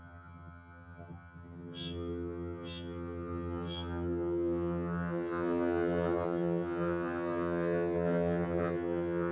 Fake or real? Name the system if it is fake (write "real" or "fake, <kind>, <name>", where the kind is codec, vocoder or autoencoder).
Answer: fake, vocoder, HiFi-GAN